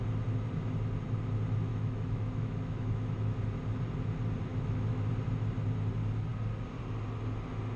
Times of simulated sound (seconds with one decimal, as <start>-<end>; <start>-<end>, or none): 1.7-3.4; 4.5-5.1